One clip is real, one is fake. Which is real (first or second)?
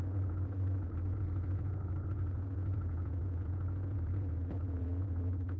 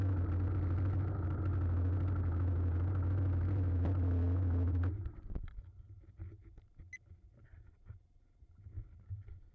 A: second